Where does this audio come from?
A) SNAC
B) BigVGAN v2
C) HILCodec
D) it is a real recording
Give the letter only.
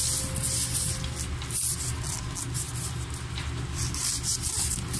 D